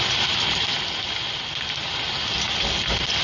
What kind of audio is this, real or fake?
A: real